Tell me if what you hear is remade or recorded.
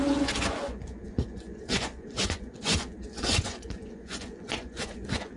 remade